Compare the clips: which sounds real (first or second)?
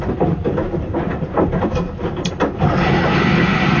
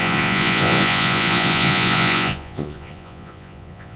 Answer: first